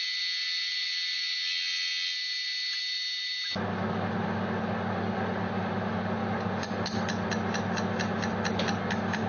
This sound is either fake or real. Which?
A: real